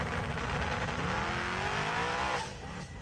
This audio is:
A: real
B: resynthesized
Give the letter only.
A